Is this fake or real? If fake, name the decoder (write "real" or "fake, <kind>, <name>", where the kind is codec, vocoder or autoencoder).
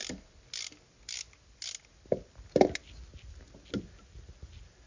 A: real